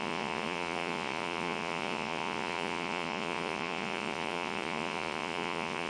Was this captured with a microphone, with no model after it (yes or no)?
no